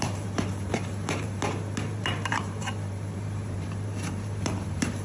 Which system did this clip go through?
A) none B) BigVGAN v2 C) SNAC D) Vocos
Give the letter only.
B